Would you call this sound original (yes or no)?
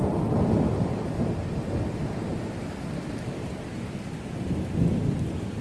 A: yes